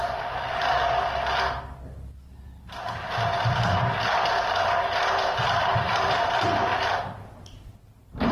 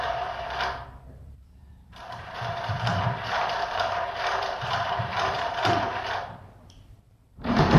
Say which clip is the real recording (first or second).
first